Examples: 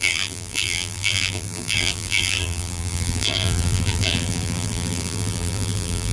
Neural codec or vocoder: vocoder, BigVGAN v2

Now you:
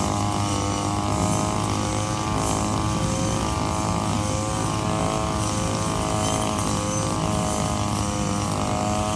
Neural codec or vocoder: none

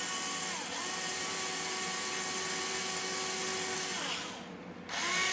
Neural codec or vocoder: none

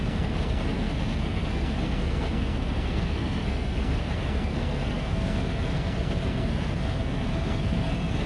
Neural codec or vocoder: codec, SNAC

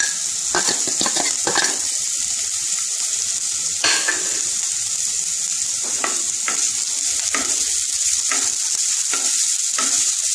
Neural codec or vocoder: none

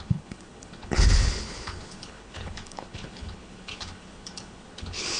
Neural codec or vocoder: codec, HILCodec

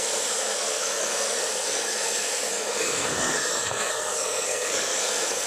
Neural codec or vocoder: codec, SNAC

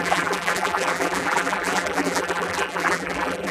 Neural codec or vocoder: vocoder, BigVGAN v2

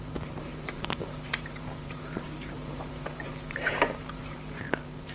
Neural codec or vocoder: vocoder, BigVGAN v2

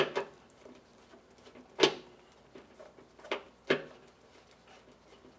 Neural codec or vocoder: none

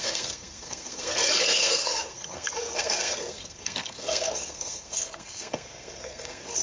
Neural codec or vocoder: codec, SNAC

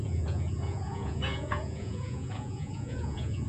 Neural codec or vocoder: vocoder, Vocos